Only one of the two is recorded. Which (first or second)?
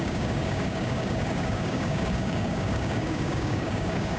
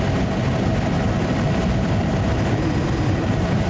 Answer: second